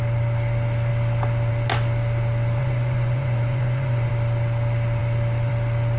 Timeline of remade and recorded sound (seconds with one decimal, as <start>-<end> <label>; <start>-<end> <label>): 0.0-2.6 recorded; 2.6-4.1 remade; 4.1-6.0 recorded